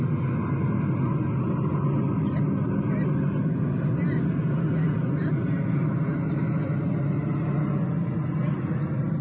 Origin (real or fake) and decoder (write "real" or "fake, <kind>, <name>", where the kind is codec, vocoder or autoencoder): real